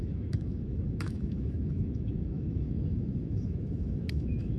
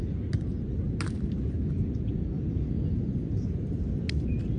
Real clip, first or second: second